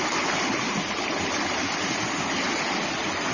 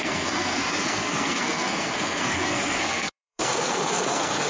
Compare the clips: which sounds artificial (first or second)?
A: second